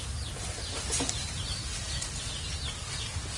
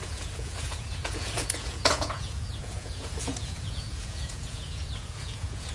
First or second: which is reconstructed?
second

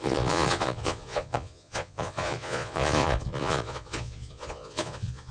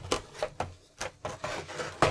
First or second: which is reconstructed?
first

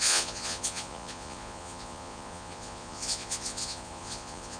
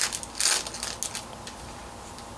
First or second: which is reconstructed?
first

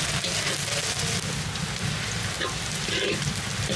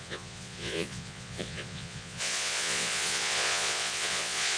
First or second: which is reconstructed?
second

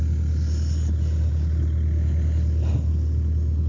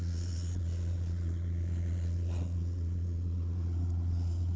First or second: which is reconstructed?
second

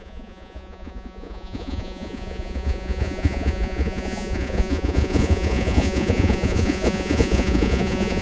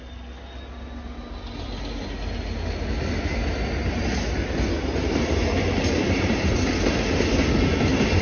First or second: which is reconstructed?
first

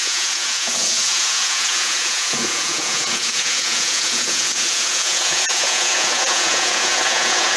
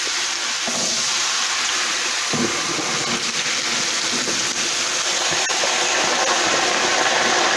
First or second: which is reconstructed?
first